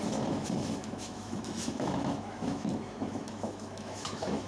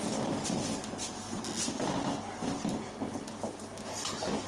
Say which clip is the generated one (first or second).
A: first